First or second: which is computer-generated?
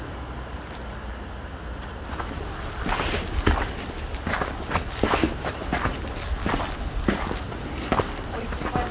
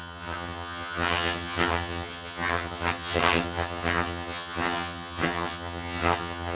second